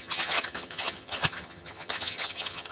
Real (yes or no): no